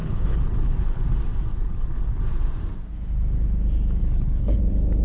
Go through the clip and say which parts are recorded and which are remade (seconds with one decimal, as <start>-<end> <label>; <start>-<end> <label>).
0.0-1.0 remade; 1.0-1.5 recorded; 1.5-2.2 remade; 2.2-4.0 recorded; 4.0-4.6 remade; 4.6-5.0 recorded